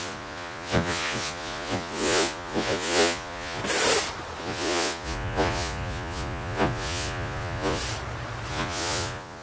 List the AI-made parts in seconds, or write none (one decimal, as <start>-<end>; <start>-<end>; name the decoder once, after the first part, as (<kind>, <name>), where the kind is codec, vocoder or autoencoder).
0.0-3.6 (vocoder, Vocos); 4.4-7.8; 8.5-9.4